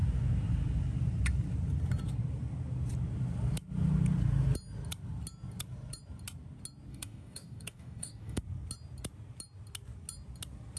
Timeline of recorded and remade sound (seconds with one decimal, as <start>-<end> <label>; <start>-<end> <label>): 0.0-6.9 recorded; 6.9-8.4 remade; 8.4-10.8 recorded